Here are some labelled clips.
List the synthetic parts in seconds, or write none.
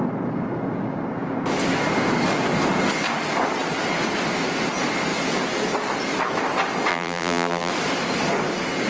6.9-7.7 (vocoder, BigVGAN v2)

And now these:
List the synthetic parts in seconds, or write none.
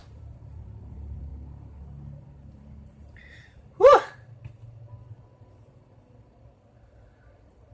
0.0-1.3 (vocoder, BigVGAN v2); 2.2-7.7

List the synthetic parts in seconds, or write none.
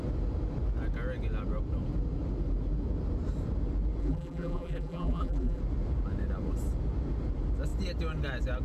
4.0-5.6 (vocoder, BigVGAN v2)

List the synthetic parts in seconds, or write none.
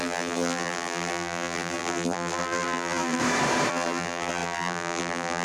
0.0-3.2 (vocoder, BigVGAN v2); 3.7-5.4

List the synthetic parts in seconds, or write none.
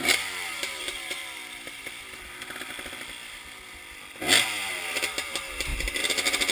0.0-1.2 (vocoder, BigVGAN v2); 4.7-6.5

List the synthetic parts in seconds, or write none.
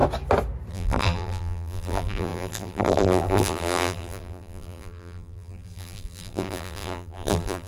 0.7-7.7 (vocoder, BigVGAN v2)